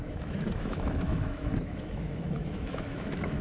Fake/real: fake